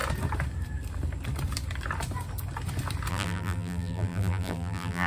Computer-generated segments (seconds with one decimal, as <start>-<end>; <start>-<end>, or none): 3.1-5.1